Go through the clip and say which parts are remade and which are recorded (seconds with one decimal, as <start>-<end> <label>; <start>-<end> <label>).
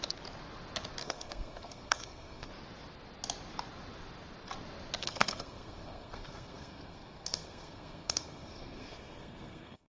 0.0-1.0 recorded; 1.0-2.5 remade; 2.5-5.0 recorded; 5.0-9.9 remade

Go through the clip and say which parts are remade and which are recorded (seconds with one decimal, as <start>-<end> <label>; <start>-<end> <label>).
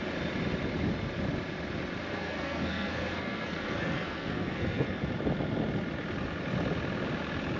0.0-2.1 recorded; 2.1-5.0 remade; 5.0-7.6 recorded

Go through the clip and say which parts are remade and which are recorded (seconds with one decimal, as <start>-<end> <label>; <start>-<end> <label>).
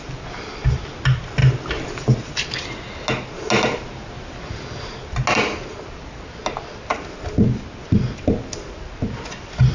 0.0-9.7 recorded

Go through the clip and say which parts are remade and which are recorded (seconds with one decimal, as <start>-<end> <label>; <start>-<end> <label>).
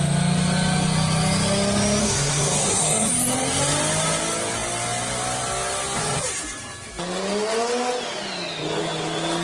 0.0-2.0 recorded; 2.0-3.1 remade; 3.1-9.4 recorded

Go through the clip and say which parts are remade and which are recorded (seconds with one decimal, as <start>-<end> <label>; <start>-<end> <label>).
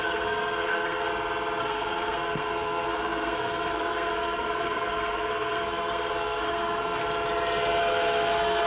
0.0-1.1 remade; 1.1-1.6 recorded; 1.6-7.0 remade; 7.0-7.8 recorded; 7.8-8.7 remade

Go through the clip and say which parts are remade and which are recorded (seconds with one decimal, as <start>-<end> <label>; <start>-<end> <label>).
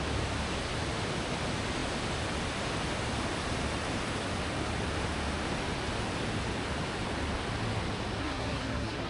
0.0-8.2 recorded; 8.2-9.1 remade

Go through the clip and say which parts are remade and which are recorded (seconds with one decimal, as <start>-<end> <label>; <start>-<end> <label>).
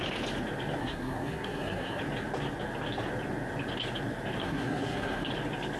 0.0-0.8 recorded; 0.8-2.0 remade; 2.0-4.4 recorded; 4.4-5.3 remade; 5.3-5.8 recorded